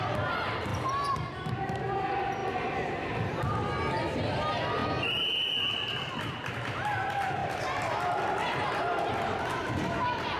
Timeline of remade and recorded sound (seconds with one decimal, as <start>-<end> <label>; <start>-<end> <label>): 0.0-0.7 recorded; 0.7-1.5 remade; 1.5-2.4 recorded; 2.4-3.4 remade; 3.4-7.4 recorded; 7.4-9.1 remade; 9.1-10.4 recorded